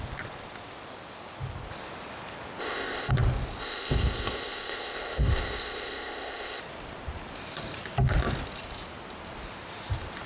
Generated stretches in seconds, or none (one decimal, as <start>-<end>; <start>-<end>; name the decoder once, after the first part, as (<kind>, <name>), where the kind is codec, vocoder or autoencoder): 2.6-3.1 (codec, ZipCodec); 3.6-6.6